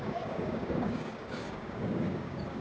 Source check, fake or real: fake